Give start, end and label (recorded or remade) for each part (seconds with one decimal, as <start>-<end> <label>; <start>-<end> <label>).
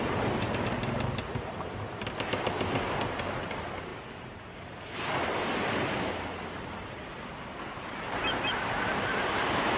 0.0-9.8 recorded